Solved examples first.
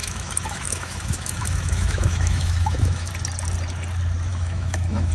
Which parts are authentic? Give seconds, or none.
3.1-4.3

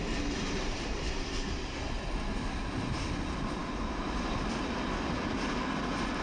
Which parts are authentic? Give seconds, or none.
0.0-6.2